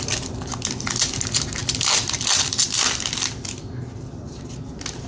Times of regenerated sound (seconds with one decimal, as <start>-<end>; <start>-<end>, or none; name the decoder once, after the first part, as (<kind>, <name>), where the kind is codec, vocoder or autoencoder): 1.6-3.2 (vocoder, BigVGAN v2)